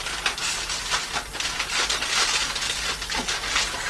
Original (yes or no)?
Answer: yes